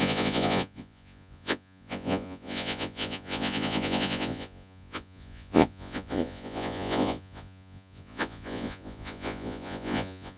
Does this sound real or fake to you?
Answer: fake